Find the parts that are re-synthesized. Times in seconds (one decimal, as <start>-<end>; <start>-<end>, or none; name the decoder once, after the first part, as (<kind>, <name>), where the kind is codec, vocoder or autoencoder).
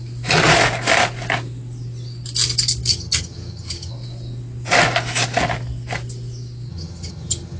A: 2.9-3.9 (vocoder, HiFi-GAN); 6.7-7.6